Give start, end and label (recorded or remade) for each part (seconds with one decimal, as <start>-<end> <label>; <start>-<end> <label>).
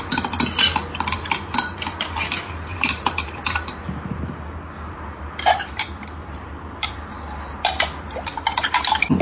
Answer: 0.0-2.7 recorded; 2.7-5.8 remade; 5.8-6.2 recorded; 6.2-6.9 remade; 6.9-9.2 recorded